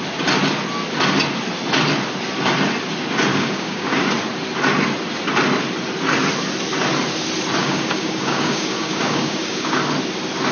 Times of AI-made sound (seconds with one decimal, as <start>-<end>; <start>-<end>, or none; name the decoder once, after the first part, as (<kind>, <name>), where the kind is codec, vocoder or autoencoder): 3.3-4.1 (codec, DAC); 7.6-9.8